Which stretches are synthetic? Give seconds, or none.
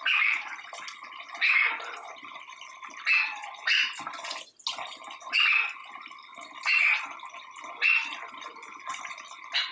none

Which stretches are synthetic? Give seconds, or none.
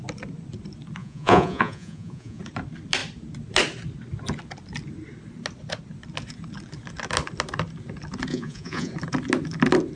1.0-2.4 (vocoder, Vocos); 8.3-8.9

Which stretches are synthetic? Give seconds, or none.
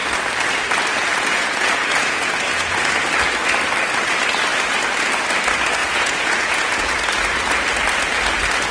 0.9-2.9 (vocoder, Vocos); 5.8-6.9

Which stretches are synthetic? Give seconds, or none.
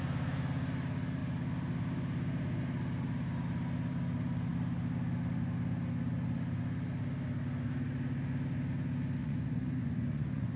9.2-10.6 (vocoder, Vocos)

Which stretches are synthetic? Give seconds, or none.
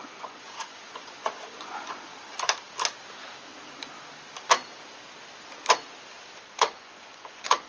0.0-2.1 (vocoder, Vocos); 6.6-7.7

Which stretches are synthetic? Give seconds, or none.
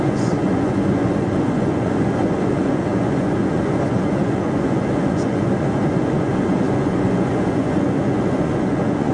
0.0-9.1 (vocoder, Vocos)